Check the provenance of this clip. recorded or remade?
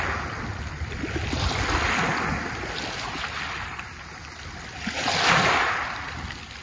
recorded